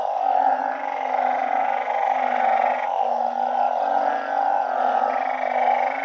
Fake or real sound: real